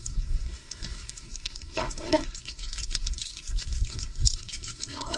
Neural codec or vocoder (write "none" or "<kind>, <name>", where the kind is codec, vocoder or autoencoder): codec, SNAC